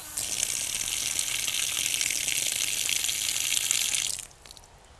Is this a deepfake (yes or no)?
no